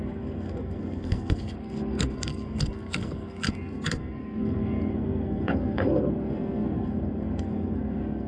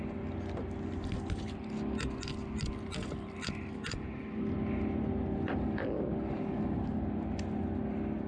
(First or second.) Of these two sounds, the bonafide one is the second